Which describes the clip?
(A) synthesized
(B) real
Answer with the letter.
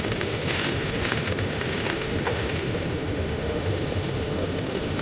A